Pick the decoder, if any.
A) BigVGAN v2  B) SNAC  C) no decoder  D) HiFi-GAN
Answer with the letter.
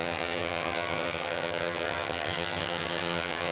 D